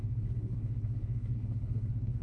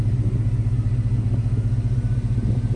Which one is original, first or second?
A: second